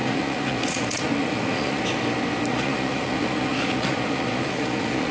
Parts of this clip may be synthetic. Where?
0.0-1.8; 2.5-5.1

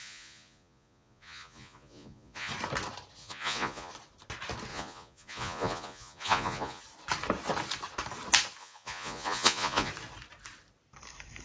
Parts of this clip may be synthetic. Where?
0.0-2.5; 3.2-3.9; 4.7-6.8; 8.6-9.9

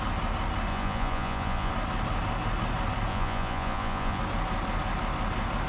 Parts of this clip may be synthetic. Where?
0.7-1.7; 3.1-4.2

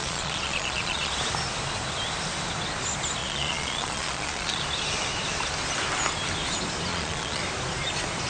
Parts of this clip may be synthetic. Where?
0.0-1.1; 3.2-4.6; 6.9-7.4

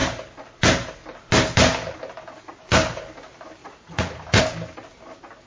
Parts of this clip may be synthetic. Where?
3.6-4.4

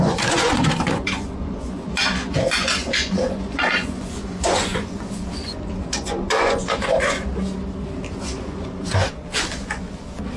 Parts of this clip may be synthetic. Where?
0.0-7.3; 8.1-10.4

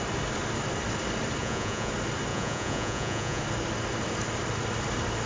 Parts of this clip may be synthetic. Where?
1.4-1.9; 2.3-3.4

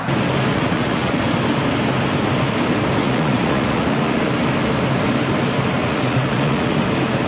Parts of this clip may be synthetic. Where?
0.5-1.2; 3.0-4.3; 5.8-6.8